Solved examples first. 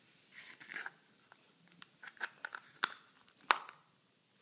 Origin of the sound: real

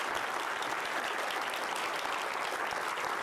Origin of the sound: real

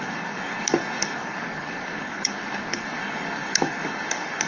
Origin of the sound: fake